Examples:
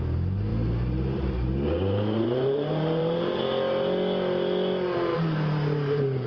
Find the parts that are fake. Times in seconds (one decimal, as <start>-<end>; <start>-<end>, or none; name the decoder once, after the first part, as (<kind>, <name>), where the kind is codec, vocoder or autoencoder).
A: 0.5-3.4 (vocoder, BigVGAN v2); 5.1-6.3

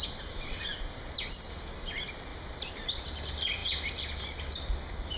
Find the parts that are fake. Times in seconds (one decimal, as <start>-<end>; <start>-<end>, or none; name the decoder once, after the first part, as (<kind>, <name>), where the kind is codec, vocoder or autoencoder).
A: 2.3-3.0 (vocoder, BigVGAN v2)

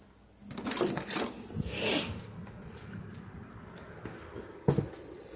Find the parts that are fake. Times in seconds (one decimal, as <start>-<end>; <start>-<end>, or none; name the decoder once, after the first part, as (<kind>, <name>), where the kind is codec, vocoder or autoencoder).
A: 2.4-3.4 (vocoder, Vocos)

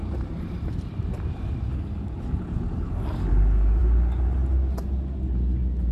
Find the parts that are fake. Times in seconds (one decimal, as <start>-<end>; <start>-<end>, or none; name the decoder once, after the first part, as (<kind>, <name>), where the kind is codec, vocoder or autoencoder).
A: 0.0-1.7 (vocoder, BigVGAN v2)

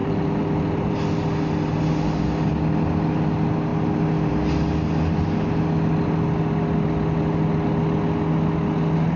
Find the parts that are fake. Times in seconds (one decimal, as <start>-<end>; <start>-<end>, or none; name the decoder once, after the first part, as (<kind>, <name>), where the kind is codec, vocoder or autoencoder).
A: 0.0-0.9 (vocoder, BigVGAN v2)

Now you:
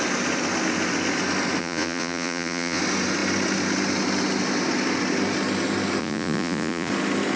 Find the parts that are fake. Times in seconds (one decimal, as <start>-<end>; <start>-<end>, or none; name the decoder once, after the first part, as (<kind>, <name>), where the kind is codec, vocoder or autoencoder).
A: 1.6-2.8 (vocoder, Vocos); 6.0-6.9

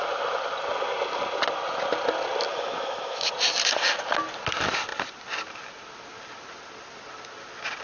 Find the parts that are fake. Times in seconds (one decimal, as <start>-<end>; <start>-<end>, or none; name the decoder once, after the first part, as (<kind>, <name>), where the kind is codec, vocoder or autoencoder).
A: 2.5-3.3 (autoencoder, DAC-VAE)